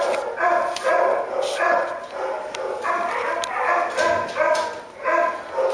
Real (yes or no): yes